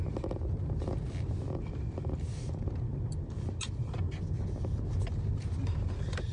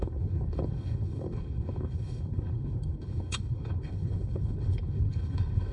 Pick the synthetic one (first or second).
second